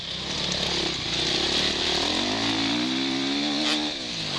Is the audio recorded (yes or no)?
yes